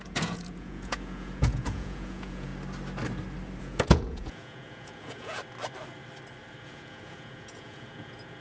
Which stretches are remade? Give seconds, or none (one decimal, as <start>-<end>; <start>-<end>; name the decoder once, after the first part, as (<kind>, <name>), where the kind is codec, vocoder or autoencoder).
0.0-2.5 (vocoder, Vocos); 3.6-5.4; 6.6-8.4